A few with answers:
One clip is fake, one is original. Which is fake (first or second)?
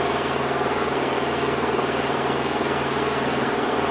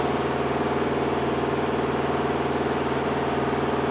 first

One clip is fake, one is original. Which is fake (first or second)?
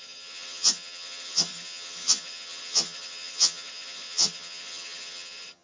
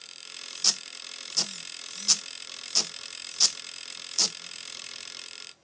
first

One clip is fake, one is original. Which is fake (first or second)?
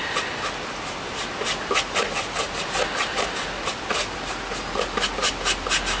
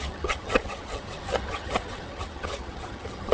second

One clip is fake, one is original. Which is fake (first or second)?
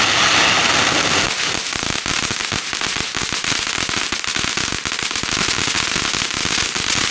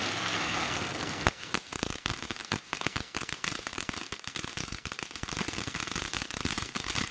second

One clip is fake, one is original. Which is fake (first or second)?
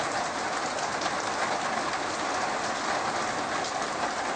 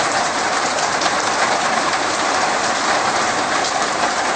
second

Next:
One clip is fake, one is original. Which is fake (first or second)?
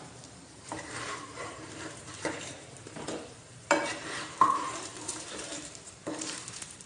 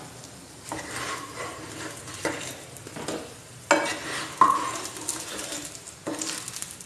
first